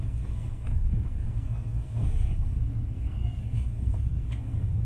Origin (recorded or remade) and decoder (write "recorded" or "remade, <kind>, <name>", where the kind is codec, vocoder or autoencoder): remade, codec, SNAC